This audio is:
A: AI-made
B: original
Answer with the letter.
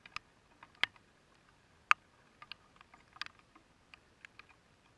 B